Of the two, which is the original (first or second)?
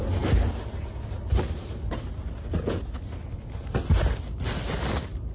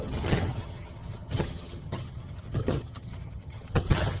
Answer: first